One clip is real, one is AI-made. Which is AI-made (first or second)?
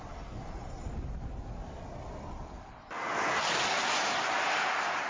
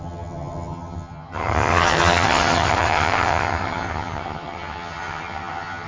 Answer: second